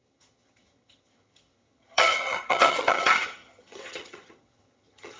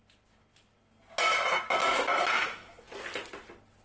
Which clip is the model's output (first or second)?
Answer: first